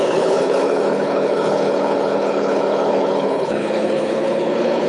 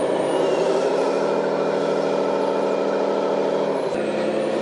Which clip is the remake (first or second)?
first